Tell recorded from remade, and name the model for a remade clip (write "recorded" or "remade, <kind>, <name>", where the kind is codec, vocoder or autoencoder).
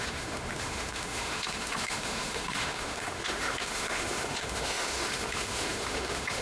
remade, autoencoder, DAC-VAE